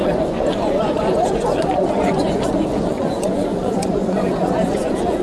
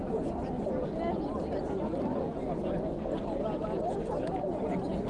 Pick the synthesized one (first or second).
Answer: first